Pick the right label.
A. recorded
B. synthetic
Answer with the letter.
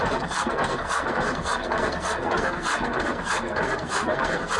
B